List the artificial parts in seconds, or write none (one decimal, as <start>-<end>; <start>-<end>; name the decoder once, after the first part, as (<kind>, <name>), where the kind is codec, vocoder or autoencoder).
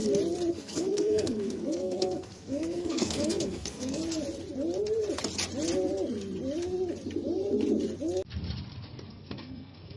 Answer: 0.5-4.0 (codec, SNAC); 9.1-10.0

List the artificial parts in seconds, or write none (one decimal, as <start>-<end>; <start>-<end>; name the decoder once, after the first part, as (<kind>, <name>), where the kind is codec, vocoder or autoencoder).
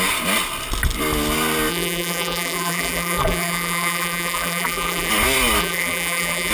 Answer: 1.7-5.1 (vocoder, BigVGAN v2); 5.6-6.5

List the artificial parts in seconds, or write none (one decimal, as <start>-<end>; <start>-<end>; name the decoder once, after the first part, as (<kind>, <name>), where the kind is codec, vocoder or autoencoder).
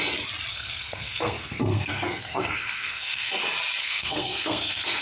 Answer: 0.5-3.3 (codec, SNAC); 3.8-5.0